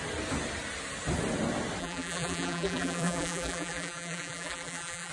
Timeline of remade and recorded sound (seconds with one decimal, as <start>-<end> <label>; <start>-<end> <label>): 0.0-1.8 recorded; 1.8-5.1 remade